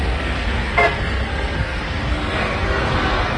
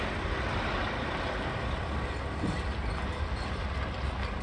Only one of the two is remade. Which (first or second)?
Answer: first